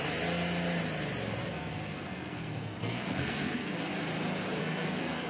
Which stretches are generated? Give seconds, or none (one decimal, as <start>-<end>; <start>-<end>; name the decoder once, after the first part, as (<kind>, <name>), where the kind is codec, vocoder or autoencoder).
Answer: 1.4-3.9 (codec, SNAC); 4.6-5.3